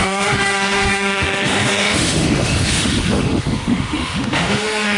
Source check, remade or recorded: remade